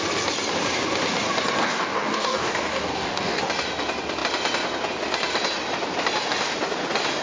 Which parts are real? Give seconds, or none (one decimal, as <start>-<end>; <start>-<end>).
0.0-1.6; 3.4-7.2